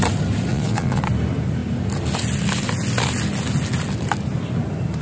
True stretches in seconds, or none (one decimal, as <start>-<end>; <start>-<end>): 0.0-0.5; 1.0-5.0